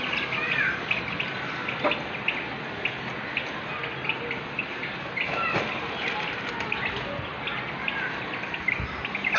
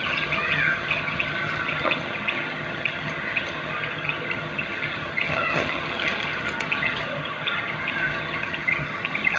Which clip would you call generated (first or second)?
second